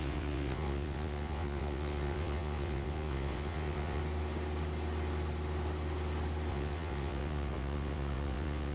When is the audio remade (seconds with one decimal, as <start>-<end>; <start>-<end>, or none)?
0.0-4.0; 6.5-8.7